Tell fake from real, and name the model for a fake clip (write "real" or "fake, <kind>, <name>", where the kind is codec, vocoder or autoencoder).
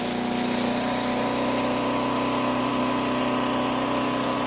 real